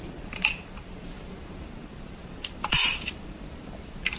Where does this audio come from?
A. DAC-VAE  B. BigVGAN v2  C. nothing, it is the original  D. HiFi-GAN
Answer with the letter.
B